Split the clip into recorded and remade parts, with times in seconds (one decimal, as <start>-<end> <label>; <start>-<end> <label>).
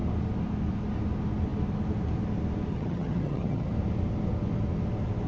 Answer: 0.0-2.7 recorded; 2.7-3.7 remade; 3.7-5.3 recorded